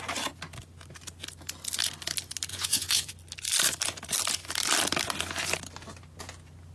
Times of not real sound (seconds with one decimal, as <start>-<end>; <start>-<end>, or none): 2.5-3.1